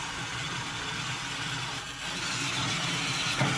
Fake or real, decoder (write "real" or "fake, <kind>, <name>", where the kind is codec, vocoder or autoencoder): real